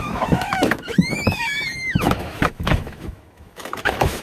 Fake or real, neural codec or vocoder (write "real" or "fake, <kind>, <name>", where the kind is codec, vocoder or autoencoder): fake, autoencoder, DAC-VAE